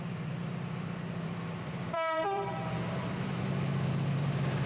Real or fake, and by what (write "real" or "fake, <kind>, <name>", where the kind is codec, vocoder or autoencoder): fake, vocoder, BigVGAN v2